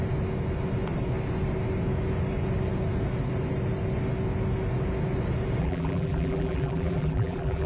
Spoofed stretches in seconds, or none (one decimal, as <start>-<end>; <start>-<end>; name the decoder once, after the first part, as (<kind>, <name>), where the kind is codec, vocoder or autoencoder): 5.6-7.7 (vocoder, BigVGAN v2)